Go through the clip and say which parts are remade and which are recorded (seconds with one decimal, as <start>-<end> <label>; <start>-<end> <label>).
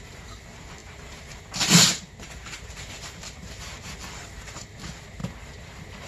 0.0-5.2 remade; 5.2-6.1 recorded